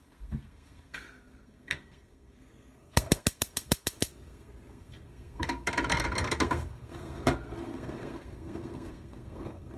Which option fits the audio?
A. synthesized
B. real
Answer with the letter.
A